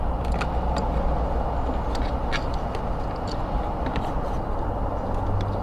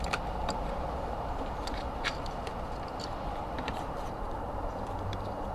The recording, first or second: first